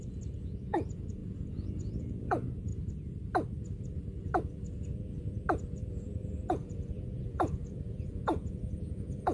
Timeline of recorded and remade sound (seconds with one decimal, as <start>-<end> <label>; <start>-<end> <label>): 0.0-2.7 remade; 2.7-5.9 recorded; 5.9-9.3 remade